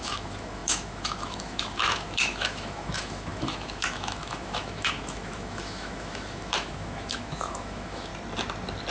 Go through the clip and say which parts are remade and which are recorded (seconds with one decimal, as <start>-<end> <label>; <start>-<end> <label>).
0.0-8.1 remade; 8.1-8.9 recorded